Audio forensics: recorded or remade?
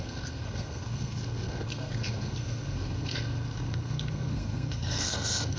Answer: remade